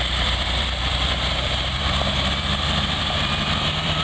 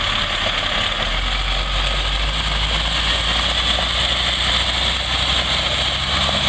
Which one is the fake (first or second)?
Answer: first